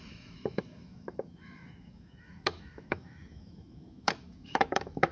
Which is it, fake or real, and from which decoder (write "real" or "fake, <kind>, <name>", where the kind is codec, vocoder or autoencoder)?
fake, autoencoder, DAC-VAE